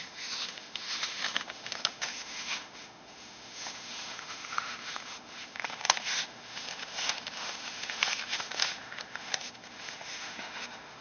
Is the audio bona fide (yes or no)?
no